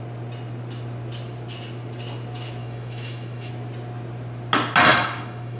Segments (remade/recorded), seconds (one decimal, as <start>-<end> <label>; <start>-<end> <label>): 0.0-2.6 recorded; 2.6-3.5 remade; 3.5-4.9 recorded; 4.9-5.6 remade